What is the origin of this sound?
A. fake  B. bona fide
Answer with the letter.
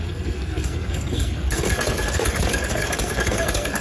A